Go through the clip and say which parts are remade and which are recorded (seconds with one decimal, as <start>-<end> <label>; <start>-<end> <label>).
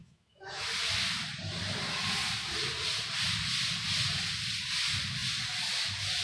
0.0-0.6 remade; 0.6-6.2 recorded